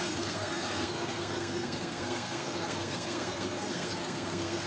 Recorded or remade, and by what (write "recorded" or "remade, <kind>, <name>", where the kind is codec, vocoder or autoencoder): remade, codec, SNAC